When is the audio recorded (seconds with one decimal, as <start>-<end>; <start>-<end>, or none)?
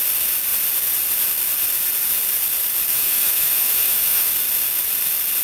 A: 0.0-2.9; 4.3-5.4